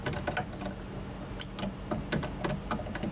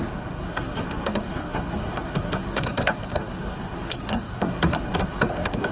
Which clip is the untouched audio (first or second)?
first